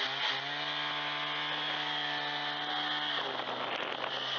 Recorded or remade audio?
recorded